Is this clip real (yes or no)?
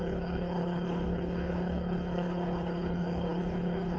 no